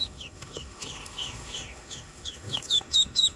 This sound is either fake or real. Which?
fake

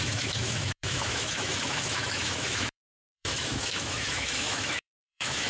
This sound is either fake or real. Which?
fake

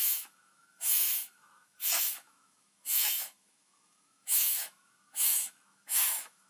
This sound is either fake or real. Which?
fake